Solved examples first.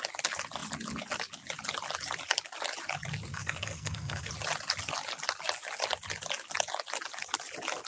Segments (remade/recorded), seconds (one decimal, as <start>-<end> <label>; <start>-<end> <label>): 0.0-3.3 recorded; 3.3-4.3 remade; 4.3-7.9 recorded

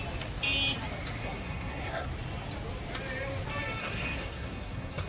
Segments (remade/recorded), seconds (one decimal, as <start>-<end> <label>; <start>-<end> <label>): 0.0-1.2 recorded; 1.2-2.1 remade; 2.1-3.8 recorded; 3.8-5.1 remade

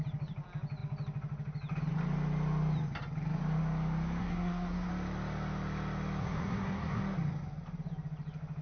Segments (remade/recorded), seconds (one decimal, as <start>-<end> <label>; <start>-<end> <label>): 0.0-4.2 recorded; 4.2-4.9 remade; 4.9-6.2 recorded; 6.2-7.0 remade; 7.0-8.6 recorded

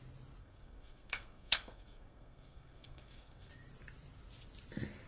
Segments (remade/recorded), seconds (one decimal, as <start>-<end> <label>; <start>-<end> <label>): 0.0-0.4 recorded; 0.4-3.5 remade; 3.5-5.1 recorded

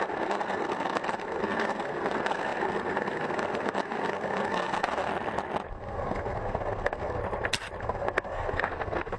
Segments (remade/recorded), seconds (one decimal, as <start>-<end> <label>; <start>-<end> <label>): 0.0-5.1 remade; 5.1-5.7 recorded; 5.7-7.2 remade; 7.2-7.8 recorded; 7.8-9.2 remade

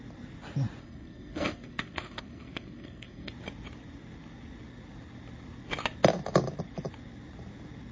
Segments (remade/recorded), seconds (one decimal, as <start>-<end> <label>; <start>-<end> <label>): 0.0-0.8 recorded; 0.8-3.3 remade; 3.3-7.9 recorded